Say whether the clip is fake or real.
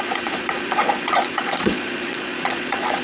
fake